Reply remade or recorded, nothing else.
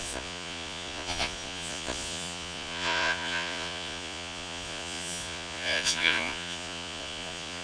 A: remade